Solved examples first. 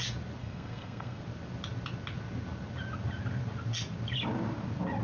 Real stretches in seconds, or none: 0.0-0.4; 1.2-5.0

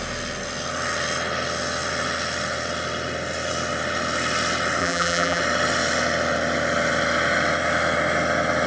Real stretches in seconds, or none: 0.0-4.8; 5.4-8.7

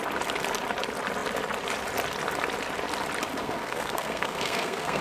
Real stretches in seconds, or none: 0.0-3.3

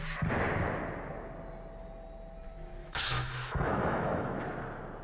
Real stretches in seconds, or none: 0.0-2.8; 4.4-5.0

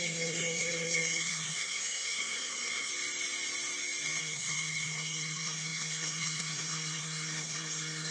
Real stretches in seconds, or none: 2.9-4.2